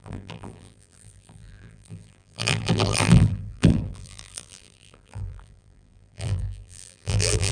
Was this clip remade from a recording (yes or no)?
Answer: yes